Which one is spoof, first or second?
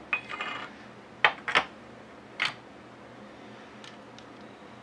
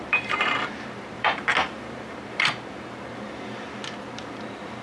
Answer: second